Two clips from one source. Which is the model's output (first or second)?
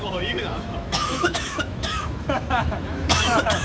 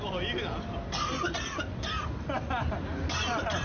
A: first